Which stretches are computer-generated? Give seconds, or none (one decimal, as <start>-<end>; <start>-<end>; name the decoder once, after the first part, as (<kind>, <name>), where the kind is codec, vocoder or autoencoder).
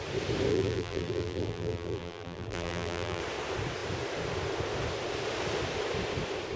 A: 0.5-3.2 (vocoder, BigVGAN v2)